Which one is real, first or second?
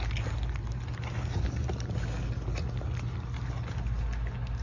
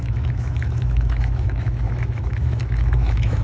first